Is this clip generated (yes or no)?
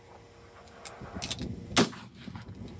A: no